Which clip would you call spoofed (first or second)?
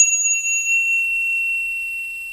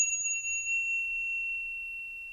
first